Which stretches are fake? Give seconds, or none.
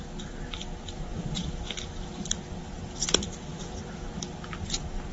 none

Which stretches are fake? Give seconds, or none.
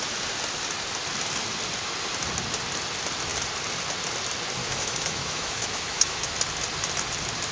4.6-6.3 (autoencoder, DAC-VAE)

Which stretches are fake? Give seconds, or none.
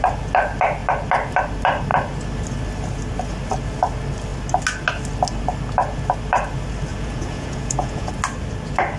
6.9-8.1 (vocoder, Vocos)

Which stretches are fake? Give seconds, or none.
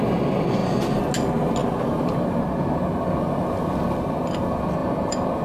1.6-2.4 (vocoder, BigVGAN v2); 4.8-5.4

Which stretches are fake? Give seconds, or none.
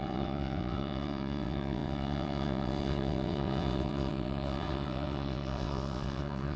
0.0-6.6 (vocoder, WaveNeXt)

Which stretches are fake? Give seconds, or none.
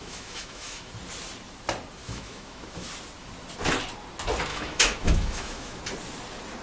0.0-0.9 (autoencoder, DAC-VAE); 2.0-2.9; 4.5-5.8